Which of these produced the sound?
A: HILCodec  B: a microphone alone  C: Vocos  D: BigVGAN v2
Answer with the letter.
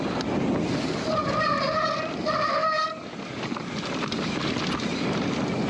B